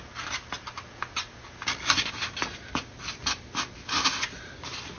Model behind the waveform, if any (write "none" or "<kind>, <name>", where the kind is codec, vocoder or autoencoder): none